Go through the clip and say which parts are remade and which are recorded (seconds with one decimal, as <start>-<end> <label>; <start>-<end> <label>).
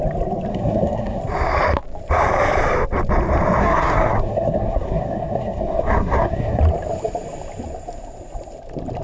0.0-0.5 recorded; 0.5-1.2 remade; 1.2-3.6 recorded; 3.6-6.6 remade; 6.6-9.0 recorded